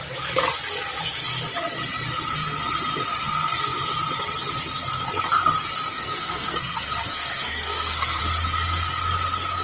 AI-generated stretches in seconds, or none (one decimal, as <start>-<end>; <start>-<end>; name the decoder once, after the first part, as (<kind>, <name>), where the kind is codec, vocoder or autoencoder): 5.9-8.2 (codec, SNAC)